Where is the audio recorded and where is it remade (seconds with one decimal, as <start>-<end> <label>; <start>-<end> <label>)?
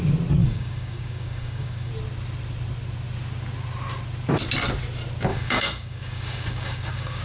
0.0-0.4 recorded; 0.4-1.9 remade; 1.9-5.3 recorded; 5.3-7.2 remade